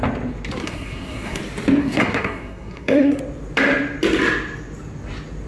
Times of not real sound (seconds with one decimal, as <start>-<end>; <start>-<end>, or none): 0.6-1.4; 1.8-3.2